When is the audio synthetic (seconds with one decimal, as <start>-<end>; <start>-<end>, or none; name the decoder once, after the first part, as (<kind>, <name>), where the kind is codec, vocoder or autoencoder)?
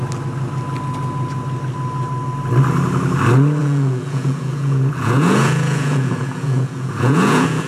3.6-7.7 (vocoder, Vocos)